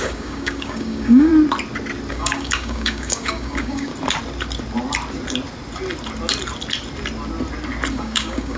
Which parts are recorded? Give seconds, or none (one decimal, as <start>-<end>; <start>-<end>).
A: 1.3-2.1; 3.9-7.9